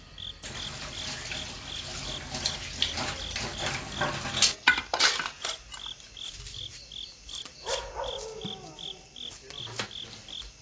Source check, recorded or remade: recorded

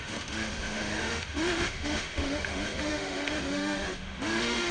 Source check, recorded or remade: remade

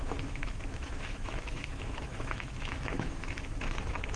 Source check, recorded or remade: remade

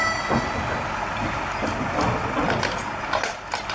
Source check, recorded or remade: recorded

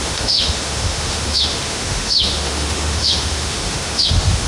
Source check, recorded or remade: remade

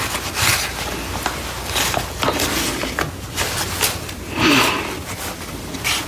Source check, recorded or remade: recorded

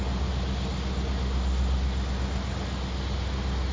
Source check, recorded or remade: recorded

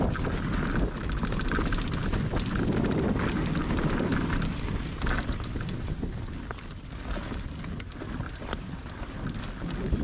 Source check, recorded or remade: recorded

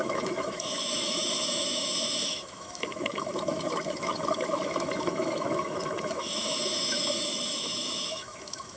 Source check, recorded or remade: remade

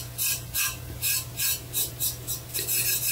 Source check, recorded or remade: recorded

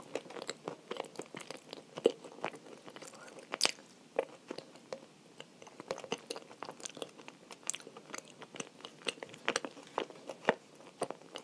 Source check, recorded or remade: recorded